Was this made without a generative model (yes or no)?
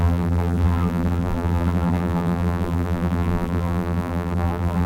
no